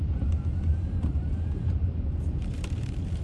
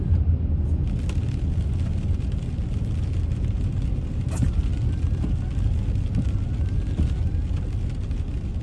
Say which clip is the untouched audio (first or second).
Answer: second